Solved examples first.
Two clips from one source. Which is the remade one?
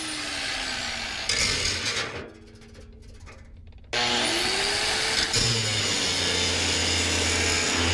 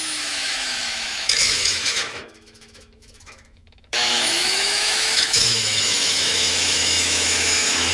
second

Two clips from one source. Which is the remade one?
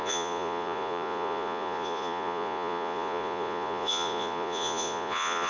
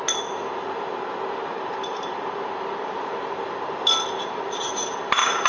first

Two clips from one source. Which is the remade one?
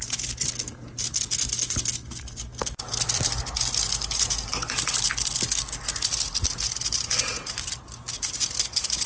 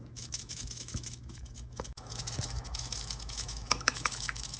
second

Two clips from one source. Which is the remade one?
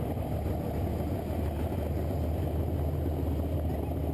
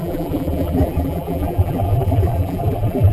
second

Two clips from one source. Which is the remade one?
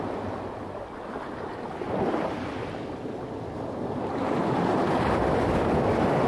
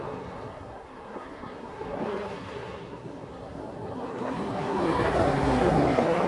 second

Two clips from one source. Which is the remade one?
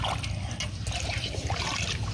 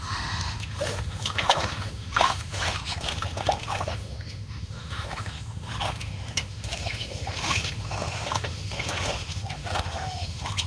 second